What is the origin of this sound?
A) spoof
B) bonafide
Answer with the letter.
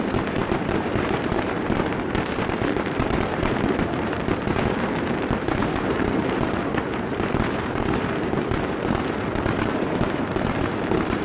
A